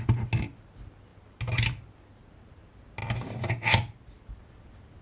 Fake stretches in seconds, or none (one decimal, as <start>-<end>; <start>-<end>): none